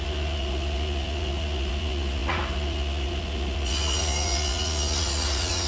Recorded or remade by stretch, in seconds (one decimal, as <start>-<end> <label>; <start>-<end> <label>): 0.0-5.7 remade